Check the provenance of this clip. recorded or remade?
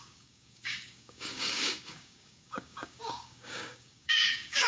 remade